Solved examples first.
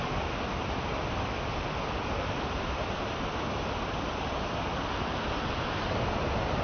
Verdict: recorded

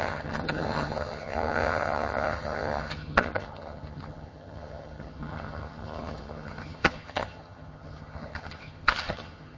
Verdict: remade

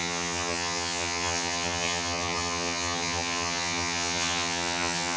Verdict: remade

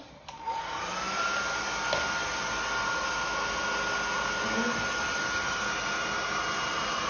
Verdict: recorded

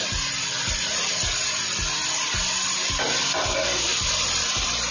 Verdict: recorded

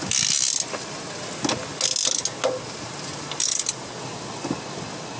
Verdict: recorded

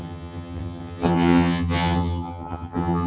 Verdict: remade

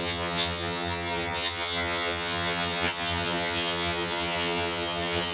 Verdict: remade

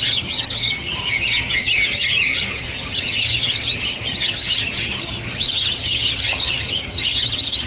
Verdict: remade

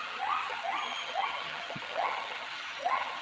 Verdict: remade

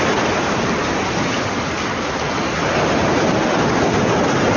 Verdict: recorded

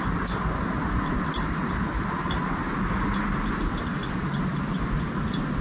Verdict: recorded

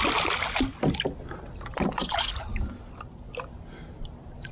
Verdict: recorded